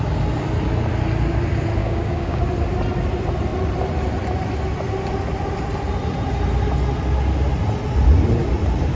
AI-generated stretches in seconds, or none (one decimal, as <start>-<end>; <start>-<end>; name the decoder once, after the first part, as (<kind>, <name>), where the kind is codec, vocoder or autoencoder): 1.8-2.4 (codec, DAC)